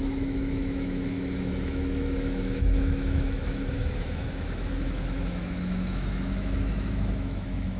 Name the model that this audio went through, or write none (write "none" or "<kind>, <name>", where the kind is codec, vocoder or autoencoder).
autoencoder, DAC-VAE